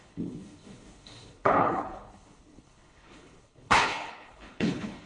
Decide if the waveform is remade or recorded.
remade